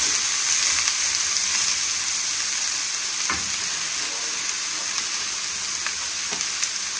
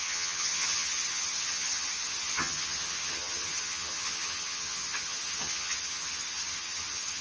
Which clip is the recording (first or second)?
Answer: first